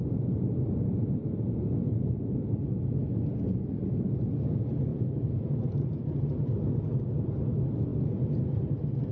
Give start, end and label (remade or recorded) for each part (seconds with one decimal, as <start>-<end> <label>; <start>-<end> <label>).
0.0-4.9 recorded; 4.9-6.5 remade; 6.5-9.1 recorded